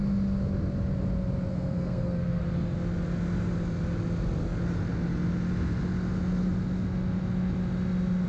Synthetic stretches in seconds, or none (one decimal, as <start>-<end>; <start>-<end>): 1.5-2.4